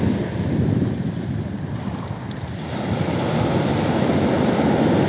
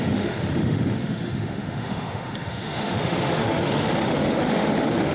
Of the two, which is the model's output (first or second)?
second